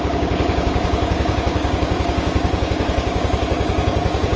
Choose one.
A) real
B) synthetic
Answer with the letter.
B